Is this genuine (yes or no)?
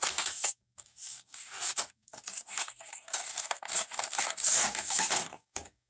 no